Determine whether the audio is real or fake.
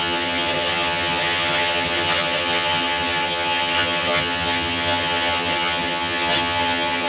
fake